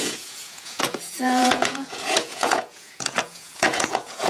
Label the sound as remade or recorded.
remade